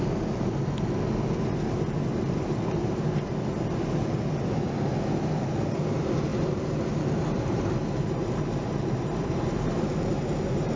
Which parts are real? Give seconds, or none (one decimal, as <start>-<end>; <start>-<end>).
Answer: 0.0-6.3